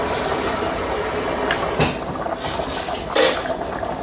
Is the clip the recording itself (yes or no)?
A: yes